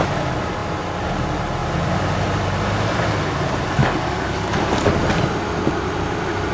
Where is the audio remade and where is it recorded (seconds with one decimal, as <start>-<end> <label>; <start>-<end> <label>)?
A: 0.0-3.8 recorded; 3.8-4.9 remade; 4.9-6.5 recorded